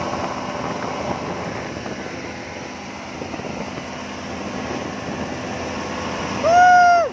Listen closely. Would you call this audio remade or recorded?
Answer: recorded